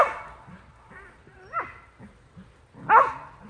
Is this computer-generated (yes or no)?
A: no